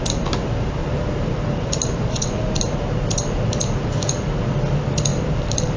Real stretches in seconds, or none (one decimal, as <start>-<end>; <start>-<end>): 0.0-0.8; 2.6-5.1